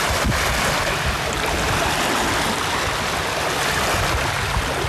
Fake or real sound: real